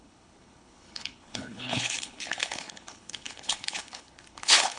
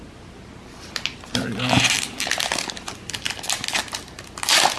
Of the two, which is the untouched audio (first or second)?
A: second